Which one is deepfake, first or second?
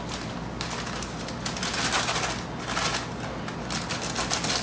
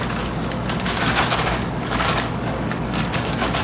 second